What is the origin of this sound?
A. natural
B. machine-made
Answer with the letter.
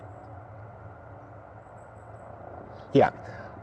B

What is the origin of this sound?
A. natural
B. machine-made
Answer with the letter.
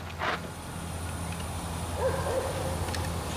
A